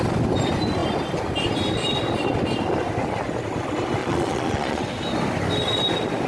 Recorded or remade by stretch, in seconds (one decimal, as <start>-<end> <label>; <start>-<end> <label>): 0.0-4.0 recorded; 4.0-4.8 remade; 4.8-6.3 recorded